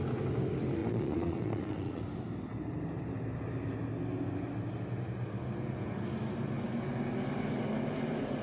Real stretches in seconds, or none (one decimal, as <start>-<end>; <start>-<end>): 0.0-0.8; 2.0-8.4